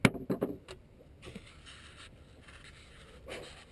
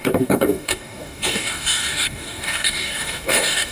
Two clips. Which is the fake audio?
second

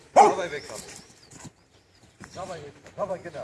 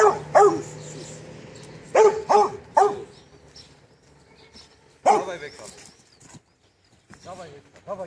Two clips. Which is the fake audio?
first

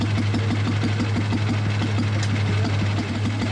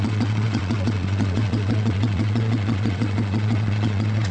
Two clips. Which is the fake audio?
second